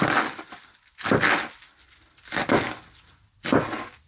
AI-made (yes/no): no